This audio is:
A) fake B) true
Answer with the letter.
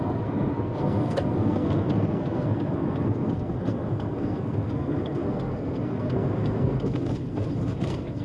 A